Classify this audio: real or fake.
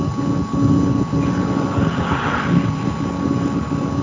real